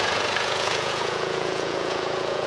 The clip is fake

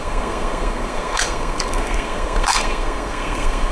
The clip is fake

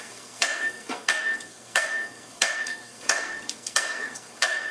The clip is fake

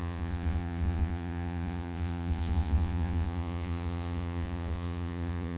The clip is fake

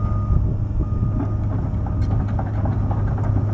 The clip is real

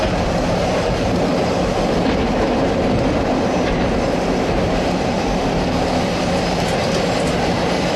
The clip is fake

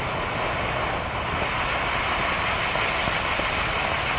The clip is real